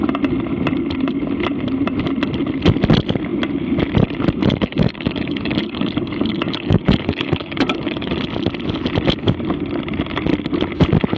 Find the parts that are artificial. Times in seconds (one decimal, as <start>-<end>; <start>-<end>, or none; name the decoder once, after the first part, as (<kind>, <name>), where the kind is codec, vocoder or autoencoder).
4.4-8.1 (codec, DAC)